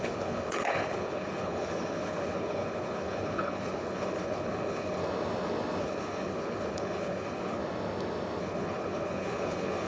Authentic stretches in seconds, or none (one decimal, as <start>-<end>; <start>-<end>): 5.0-5.8; 7.6-8.4